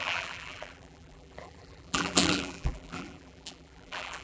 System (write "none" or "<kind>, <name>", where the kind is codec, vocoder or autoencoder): vocoder, BigVGAN v2